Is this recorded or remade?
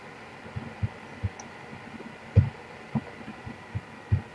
recorded